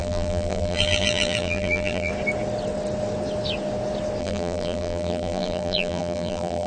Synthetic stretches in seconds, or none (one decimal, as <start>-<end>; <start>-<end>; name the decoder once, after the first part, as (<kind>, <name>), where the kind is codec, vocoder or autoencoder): 0.0-2.1 (vocoder, BigVGAN v2); 4.2-6.7